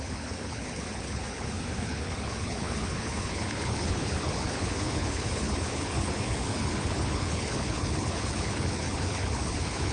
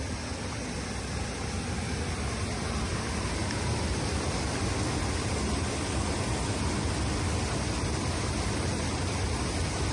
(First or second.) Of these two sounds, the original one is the second